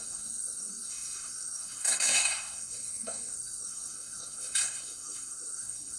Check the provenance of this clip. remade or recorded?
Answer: remade